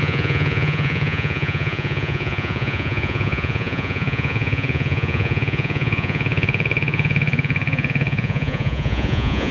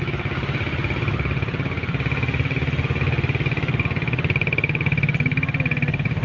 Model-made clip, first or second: first